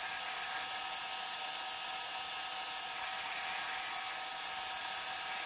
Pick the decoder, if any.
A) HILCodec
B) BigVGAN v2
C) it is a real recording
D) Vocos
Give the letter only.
C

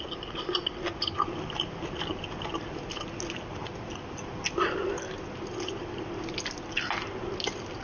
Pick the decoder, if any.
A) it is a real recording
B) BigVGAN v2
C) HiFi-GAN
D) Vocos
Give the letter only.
A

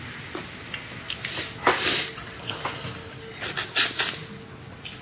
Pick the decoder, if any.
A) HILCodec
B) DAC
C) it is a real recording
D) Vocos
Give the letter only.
C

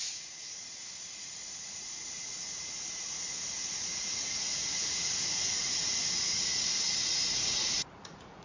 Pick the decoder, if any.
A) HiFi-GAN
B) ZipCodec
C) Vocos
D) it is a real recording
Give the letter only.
C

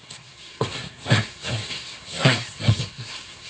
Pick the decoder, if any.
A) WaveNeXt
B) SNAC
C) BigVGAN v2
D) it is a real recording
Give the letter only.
B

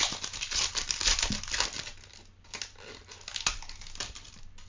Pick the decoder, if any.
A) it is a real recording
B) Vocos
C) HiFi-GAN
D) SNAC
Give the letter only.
A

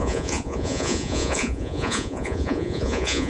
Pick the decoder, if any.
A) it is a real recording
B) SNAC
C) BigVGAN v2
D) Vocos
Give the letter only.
D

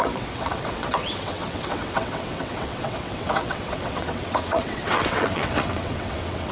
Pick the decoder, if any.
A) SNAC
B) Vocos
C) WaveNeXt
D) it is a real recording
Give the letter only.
C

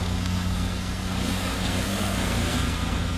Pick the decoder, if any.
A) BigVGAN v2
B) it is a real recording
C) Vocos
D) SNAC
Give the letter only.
D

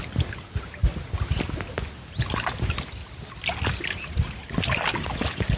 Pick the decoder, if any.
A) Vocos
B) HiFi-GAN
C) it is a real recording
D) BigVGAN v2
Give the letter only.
C